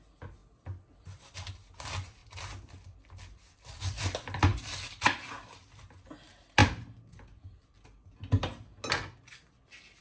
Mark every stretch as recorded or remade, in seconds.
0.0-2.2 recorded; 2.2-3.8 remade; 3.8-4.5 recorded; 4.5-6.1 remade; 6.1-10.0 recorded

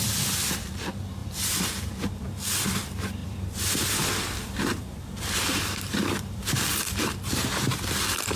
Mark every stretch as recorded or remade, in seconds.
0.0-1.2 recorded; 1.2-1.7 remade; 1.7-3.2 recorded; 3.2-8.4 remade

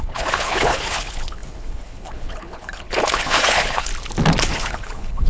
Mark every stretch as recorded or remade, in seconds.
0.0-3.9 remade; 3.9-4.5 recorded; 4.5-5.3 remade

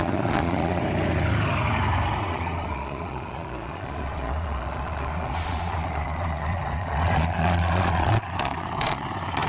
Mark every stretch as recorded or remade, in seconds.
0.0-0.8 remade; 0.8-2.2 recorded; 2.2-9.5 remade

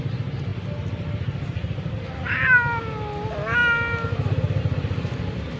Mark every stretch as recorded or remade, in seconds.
0.0-5.6 recorded